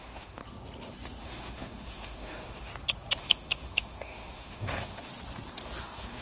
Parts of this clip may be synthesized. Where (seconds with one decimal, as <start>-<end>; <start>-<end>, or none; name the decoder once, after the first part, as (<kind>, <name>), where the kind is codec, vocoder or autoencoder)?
0.0-0.4 (autoencoder, DAC-VAE); 1.2-2.7; 3.2-5.1; 5.8-6.2